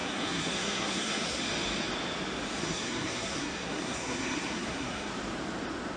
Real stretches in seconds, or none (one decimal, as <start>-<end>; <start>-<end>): 1.4-2.6; 5.1-6.0